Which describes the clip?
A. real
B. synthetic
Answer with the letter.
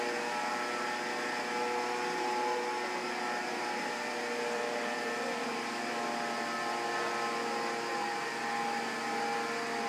A